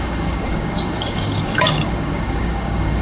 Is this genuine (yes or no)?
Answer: no